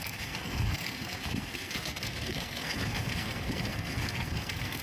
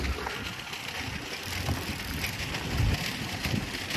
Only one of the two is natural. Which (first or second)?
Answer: second